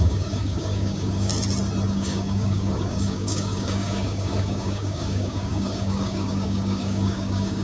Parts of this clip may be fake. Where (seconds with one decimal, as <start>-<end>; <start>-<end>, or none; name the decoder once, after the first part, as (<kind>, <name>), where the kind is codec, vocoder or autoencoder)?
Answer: 0.0-1.3 (codec, DAC); 1.9-7.6

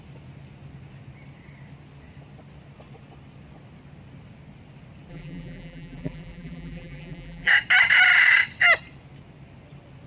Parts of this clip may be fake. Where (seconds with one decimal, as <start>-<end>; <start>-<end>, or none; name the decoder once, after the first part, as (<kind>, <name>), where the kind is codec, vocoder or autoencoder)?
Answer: 5.1-7.5 (vocoder, BigVGAN v2)

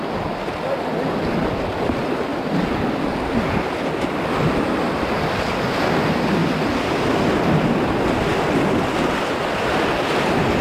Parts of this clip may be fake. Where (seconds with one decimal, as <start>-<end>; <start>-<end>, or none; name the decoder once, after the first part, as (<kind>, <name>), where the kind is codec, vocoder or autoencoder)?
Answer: none

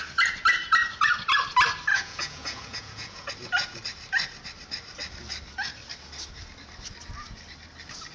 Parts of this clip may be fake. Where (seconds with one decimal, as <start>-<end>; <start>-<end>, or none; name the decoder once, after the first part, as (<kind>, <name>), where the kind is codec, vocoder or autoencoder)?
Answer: 1.9-3.3 (vocoder, Vocos)